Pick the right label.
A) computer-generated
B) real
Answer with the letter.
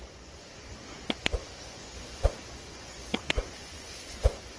A